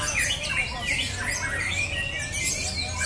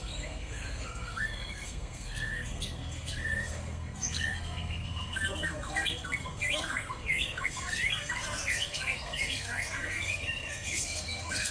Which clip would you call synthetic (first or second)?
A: second